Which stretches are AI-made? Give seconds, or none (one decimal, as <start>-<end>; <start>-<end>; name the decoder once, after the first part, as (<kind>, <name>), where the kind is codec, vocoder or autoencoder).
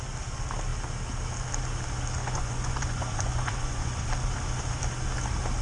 2.2-4.1 (vocoder, Vocos)